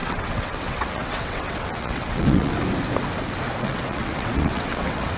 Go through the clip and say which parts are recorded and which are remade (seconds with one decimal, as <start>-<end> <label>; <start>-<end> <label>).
0.0-2.5 remade; 2.5-3.6 recorded; 3.6-5.2 remade

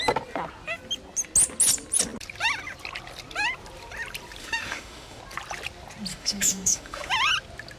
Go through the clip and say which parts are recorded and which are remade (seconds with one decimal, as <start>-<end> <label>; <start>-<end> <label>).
0.0-4.4 recorded; 4.4-5.2 remade; 5.2-6.1 recorded; 6.1-7.1 remade; 7.1-7.8 recorded

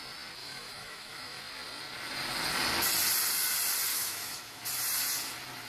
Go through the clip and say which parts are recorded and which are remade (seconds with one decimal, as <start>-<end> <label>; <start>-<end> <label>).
0.0-0.4 recorded; 0.4-1.4 remade; 1.4-3.9 recorded; 3.9-4.6 remade; 4.6-5.7 recorded

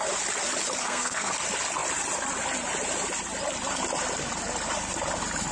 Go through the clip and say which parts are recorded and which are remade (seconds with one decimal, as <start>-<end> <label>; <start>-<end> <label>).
0.0-0.8 recorded; 0.8-1.3 remade; 1.3-5.5 recorded

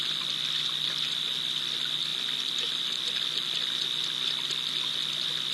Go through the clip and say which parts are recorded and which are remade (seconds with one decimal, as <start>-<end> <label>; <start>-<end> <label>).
0.0-5.5 recorded

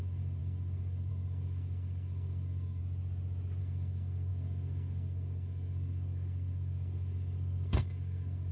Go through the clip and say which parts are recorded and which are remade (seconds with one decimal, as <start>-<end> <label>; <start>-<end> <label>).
0.0-2.8 remade; 2.8-3.6 recorded; 3.6-8.5 remade